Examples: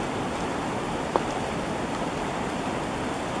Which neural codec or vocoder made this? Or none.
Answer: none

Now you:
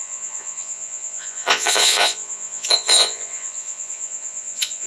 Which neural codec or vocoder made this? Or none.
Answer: vocoder, Vocos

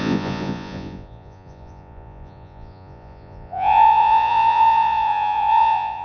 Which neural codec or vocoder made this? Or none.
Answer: vocoder, Vocos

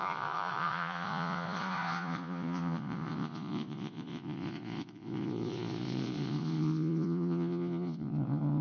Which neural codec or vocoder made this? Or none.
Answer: vocoder, Vocos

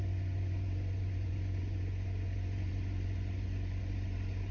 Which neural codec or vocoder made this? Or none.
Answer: vocoder, Vocos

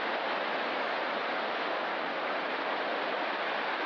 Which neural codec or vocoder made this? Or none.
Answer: none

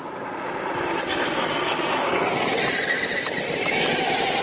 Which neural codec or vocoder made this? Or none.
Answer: none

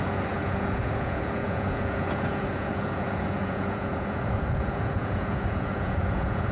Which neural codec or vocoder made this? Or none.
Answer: vocoder, Vocos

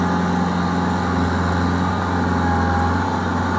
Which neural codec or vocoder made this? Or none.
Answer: none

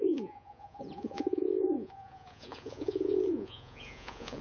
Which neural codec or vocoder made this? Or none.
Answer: vocoder, Vocos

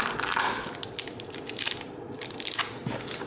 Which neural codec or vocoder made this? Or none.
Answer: none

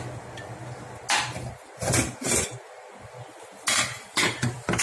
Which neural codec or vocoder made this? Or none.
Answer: none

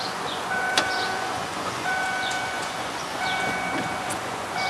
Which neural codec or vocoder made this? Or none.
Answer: vocoder, Vocos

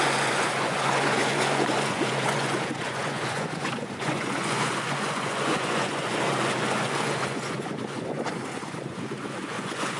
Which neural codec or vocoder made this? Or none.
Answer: vocoder, Vocos